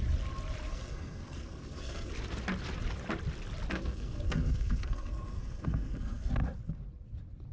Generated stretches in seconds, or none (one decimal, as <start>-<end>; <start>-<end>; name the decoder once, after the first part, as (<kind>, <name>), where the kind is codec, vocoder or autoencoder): 0.7-2.1 (codec, SNAC); 3.7-6.3